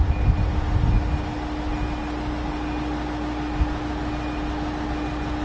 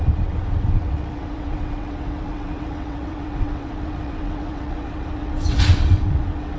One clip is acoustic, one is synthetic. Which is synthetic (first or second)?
second